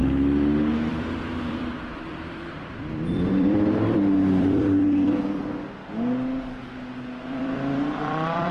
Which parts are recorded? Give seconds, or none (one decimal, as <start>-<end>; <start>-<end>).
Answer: 0.0-0.9; 5.4-7.3